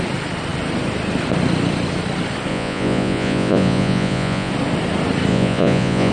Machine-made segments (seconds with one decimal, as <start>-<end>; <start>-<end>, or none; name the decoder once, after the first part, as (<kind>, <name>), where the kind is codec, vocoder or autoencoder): 2.5-4.5 (vocoder, Vocos); 5.3-6.1